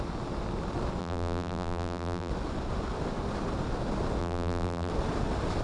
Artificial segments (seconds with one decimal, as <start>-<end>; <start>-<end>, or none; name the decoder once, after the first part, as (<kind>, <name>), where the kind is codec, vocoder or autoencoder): 1.0-2.3 (vocoder, BigVGAN v2); 4.2-4.9